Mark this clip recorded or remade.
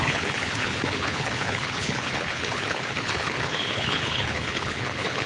remade